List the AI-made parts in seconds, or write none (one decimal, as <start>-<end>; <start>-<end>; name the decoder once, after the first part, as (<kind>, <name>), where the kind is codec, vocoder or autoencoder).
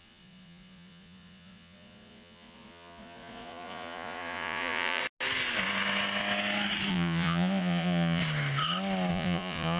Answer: 0.0-5.0 (vocoder, Vocos); 6.9-8.2; 9.1-9.8